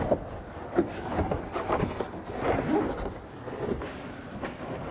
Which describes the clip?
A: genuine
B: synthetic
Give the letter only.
A